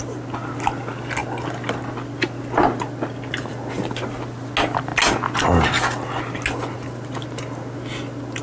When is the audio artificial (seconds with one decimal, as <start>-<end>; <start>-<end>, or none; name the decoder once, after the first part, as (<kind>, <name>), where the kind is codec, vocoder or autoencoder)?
none